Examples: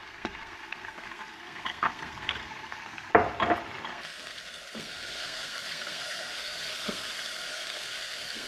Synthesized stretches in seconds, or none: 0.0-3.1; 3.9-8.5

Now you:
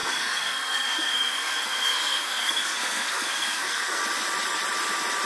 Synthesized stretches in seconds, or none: 0.0-4.0

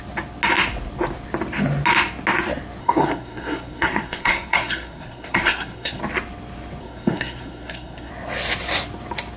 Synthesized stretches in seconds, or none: 2.8-6.0; 6.8-8.1

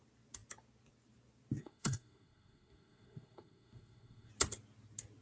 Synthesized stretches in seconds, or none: 1.6-4.3

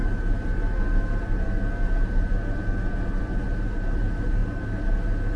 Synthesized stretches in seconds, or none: none

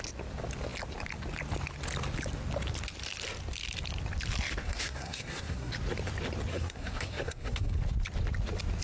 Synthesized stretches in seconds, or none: 4.6-5.7; 6.5-7.8

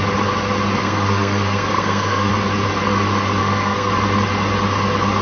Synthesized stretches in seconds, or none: 0.8-2.3; 3.4-3.9

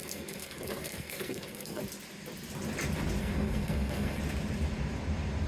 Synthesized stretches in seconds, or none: 0.0-1.8; 3.2-4.2